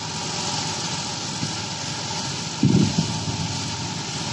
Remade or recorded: recorded